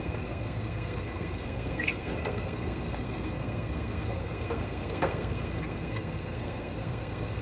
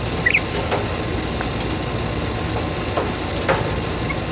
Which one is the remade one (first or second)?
first